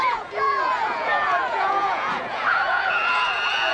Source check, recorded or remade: remade